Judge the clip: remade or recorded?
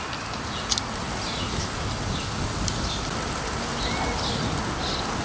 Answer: recorded